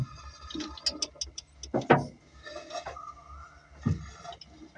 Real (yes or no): yes